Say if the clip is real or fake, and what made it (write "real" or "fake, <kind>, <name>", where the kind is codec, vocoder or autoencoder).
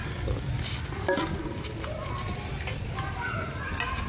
real